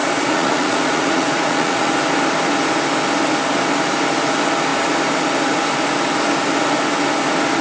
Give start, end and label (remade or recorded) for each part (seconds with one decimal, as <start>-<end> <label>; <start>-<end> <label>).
0.0-1.9 remade; 1.9-7.6 recorded